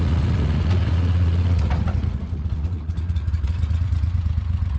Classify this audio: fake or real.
fake